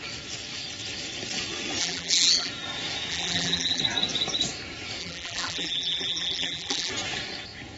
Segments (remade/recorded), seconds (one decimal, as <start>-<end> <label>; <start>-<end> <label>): 0.0-1.8 recorded; 1.8-2.5 remade; 2.5-3.1 recorded; 3.1-3.8 remade; 3.8-5.0 recorded; 5.0-6.9 remade; 6.9-7.8 recorded